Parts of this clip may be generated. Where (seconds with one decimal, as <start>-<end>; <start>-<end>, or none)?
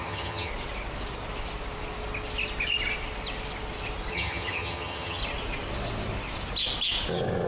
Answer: 0.0-0.5; 4.1-5.2